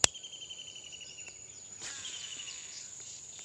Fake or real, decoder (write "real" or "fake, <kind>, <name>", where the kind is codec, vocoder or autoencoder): real